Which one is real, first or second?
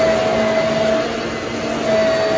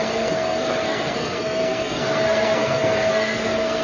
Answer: first